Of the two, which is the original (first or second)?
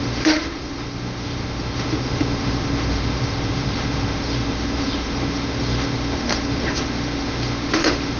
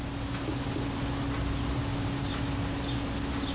second